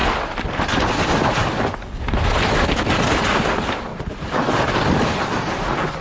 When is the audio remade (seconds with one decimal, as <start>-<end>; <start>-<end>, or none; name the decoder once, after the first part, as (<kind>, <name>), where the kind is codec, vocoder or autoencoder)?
3.9-4.8 (vocoder, BigVGAN v2)